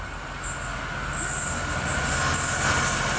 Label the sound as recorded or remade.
recorded